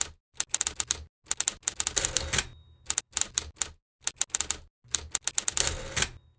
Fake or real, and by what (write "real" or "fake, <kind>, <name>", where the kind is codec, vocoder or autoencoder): real